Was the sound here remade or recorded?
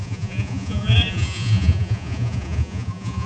remade